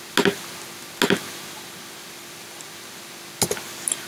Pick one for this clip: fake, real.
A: real